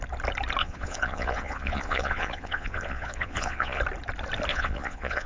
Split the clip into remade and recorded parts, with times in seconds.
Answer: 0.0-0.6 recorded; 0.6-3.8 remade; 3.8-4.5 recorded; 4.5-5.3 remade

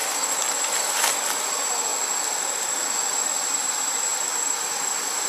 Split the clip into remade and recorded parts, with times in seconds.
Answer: 0.0-1.9 remade; 1.9-3.4 recorded; 3.4-4.1 remade; 4.1-4.6 recorded; 4.6-5.3 remade